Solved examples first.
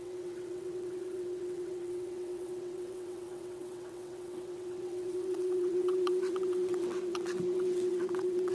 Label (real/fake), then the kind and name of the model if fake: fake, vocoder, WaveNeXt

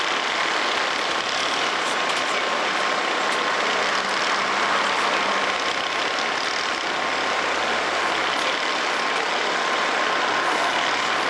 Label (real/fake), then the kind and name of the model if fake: real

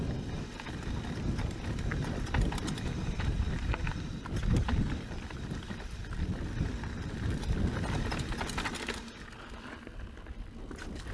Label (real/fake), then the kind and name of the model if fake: real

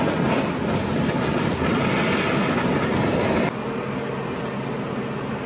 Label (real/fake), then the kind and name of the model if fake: real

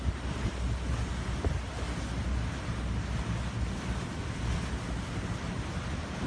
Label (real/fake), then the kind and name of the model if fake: real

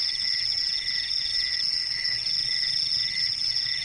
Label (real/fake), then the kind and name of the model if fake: fake, vocoder, WaveNeXt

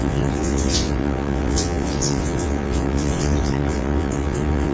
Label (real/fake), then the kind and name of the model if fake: fake, vocoder, WaveNeXt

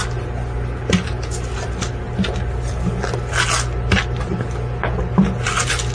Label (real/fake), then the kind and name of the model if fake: real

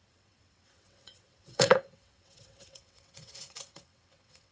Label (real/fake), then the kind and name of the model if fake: fake, vocoder, WaveNeXt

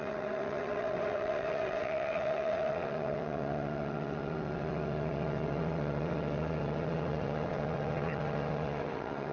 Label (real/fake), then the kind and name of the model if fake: fake, vocoder, WaveNeXt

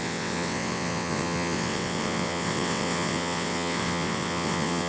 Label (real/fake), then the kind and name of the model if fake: fake, vocoder, WaveNeXt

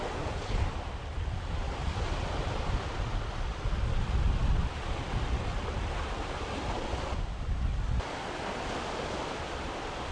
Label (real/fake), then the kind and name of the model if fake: real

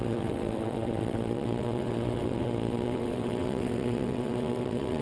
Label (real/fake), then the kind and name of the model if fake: fake, vocoder, WaveNeXt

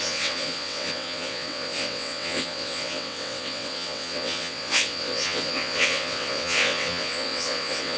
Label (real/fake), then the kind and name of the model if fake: fake, vocoder, WaveNeXt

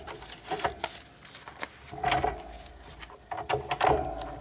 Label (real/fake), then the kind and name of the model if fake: real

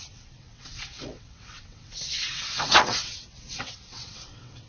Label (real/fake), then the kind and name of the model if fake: fake, vocoder, WaveNeXt